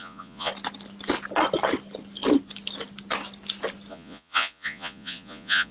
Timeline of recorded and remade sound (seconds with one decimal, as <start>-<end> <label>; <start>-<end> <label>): 0.0-0.5 remade; 0.5-3.9 recorded; 3.9-5.7 remade